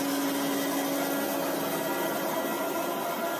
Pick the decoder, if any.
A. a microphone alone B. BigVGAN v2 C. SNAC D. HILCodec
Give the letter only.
A